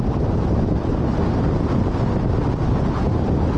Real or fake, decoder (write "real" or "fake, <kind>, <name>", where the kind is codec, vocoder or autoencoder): real